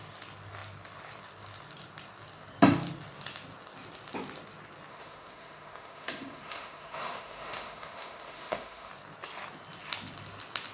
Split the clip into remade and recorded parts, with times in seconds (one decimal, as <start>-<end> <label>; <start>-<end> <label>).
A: 0.0-4.9 recorded; 4.9-8.9 remade; 8.9-10.7 recorded